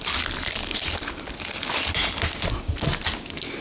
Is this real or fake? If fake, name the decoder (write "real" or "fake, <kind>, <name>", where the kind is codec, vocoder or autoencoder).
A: real